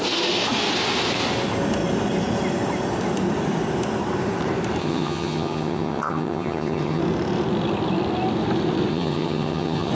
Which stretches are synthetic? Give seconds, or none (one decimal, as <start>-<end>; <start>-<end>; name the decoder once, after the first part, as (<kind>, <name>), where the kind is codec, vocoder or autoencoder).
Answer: 4.8-7.0 (vocoder, HiFi-GAN); 8.9-9.9

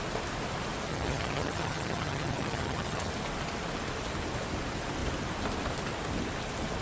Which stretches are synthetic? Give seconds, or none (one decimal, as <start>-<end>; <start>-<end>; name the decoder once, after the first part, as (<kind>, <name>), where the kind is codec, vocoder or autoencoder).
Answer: 0.9-3.1 (vocoder, HiFi-GAN)

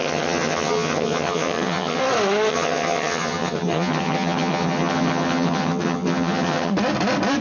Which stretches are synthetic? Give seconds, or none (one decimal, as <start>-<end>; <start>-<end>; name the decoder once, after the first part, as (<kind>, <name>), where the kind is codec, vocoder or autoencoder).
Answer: 0.0-2.0 (vocoder, HiFi-GAN); 2.5-6.7